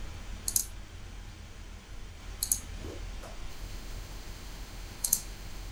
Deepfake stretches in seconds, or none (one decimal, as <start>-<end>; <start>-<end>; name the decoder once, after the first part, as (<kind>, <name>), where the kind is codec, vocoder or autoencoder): 3.5-5.7 (autoencoder, DAC-VAE)